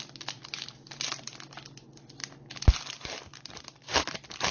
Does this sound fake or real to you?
real